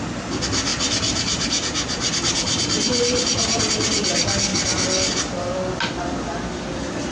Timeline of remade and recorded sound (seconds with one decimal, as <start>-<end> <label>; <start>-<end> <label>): 0.0-0.7 recorded; 0.7-3.6 remade; 3.6-7.1 recorded